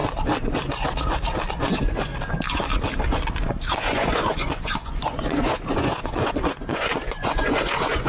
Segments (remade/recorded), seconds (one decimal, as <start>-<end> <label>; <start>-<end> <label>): 0.0-1.5 recorded; 1.5-2.1 remade; 2.1-3.8 recorded; 3.8-8.1 remade